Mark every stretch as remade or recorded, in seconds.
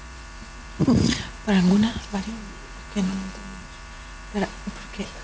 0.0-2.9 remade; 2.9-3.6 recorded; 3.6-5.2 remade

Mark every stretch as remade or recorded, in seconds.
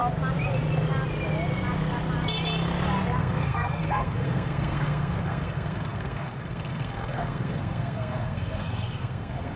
0.0-3.2 recorded; 3.2-9.6 remade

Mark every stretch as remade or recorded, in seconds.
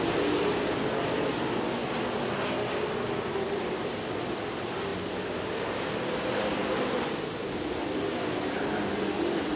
0.0-9.6 recorded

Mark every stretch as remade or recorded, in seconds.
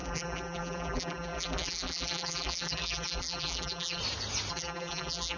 0.0-4.0 remade; 4.0-4.5 recorded; 4.5-5.4 remade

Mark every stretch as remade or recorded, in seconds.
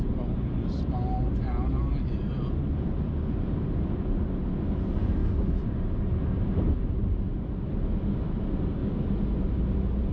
0.0-10.1 recorded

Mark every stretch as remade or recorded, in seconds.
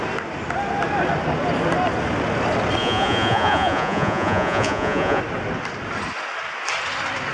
0.0-2.8 recorded; 2.8-5.2 remade; 5.2-7.3 recorded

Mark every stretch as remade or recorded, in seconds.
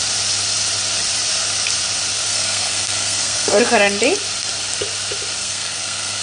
0.0-2.3 recorded; 2.3-3.6 remade; 3.6-5.4 recorded; 5.4-6.2 remade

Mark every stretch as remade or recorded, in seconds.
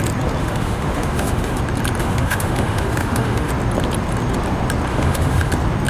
0.0-0.4 recorded; 0.4-1.6 remade; 1.6-2.0 recorded; 2.0-3.5 remade; 3.5-4.9 recorded; 4.9-5.5 remade; 5.5-5.9 recorded